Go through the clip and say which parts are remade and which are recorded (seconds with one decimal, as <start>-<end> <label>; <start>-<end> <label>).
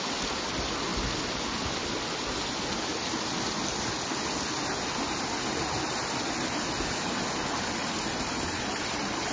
0.0-9.3 recorded